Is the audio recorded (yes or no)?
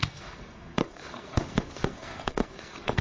no